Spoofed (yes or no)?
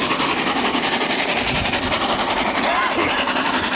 no